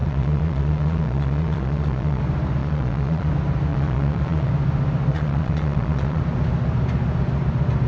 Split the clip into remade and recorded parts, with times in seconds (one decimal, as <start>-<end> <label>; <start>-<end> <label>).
0.0-2.2 remade; 2.2-2.6 recorded; 2.6-3.3 remade; 3.3-3.7 recorded; 3.7-4.5 remade; 4.5-5.1 recorded; 5.1-6.2 remade; 6.2-7.9 recorded